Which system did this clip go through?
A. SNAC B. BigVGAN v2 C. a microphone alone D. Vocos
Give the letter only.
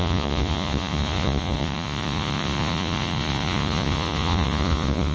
D